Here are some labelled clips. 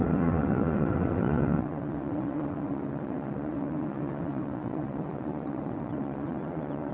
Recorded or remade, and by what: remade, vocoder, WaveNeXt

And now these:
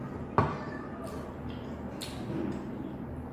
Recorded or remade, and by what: recorded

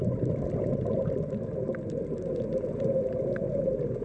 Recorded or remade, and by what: recorded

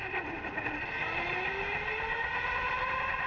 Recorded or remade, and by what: recorded